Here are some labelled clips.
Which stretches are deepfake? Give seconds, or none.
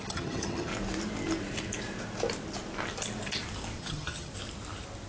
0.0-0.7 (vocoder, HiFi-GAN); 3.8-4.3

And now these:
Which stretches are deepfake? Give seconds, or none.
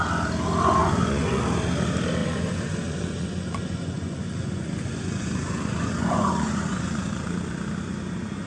0.8-1.4 (vocoder, Vocos); 2.2-7.1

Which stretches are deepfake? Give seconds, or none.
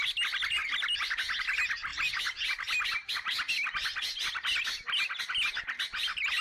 none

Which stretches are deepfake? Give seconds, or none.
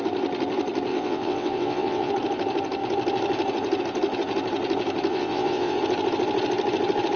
0.9-2.1 (vocoder, WaveNeXt); 5.1-5.8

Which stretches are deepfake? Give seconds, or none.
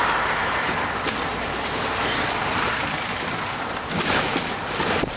0.0-0.4 (vocoder, BigVGAN v2); 2.2-5.2